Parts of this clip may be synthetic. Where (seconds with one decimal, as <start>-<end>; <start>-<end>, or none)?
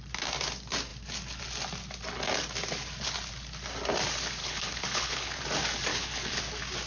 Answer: 4.4-5.4; 5.9-6.4